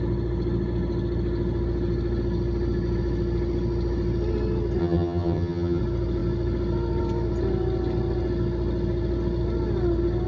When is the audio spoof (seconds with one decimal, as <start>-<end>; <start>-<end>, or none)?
4.8-5.8